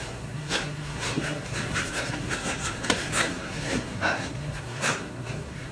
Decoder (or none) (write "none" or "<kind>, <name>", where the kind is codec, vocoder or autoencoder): codec, SNAC